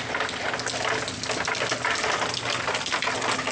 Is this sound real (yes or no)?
yes